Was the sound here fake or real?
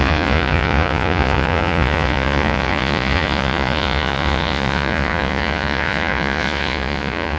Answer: fake